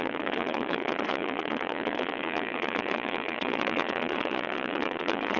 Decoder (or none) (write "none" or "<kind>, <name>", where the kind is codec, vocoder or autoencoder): vocoder, Vocos